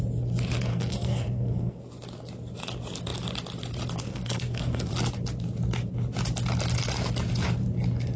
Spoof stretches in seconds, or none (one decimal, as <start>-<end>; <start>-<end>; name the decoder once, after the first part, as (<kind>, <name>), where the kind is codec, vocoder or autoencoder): 0.7-1.8 (codec, SNAC); 4.1-4.9